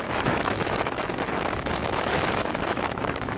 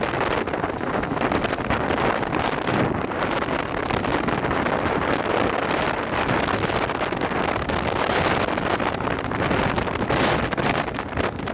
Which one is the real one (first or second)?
second